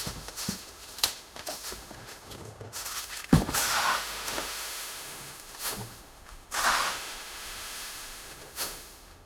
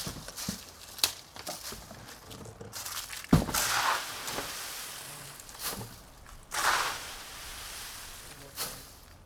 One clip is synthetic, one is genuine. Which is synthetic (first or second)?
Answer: first